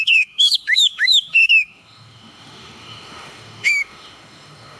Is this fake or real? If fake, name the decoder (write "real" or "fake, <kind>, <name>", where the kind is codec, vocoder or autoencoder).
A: fake, autoencoder, DAC-VAE